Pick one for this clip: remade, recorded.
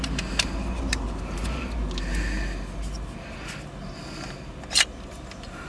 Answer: recorded